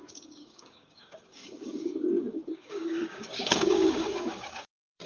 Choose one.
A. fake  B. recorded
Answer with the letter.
A